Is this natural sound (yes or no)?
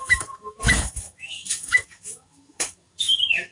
no